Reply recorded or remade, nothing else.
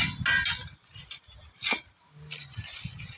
recorded